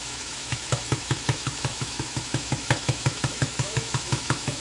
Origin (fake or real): fake